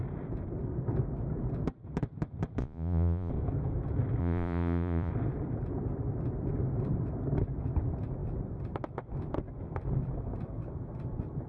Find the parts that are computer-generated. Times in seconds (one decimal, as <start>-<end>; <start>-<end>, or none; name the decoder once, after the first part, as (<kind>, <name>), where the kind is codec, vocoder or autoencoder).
2.6-3.3 (vocoder, Vocos); 4.2-5.1